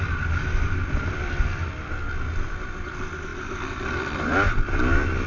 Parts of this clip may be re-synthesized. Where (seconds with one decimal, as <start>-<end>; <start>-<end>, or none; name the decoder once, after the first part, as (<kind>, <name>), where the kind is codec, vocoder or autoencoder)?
none